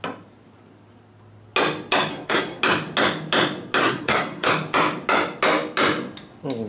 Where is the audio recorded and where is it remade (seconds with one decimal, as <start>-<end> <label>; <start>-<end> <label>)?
0.0-2.1 recorded; 2.1-2.6 remade; 2.6-3.8 recorded; 3.8-4.5 remade; 4.5-6.7 recorded